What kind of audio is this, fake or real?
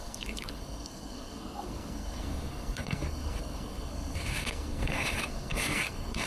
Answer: fake